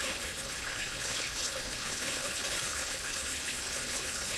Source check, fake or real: fake